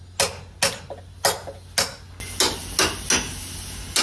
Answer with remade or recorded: recorded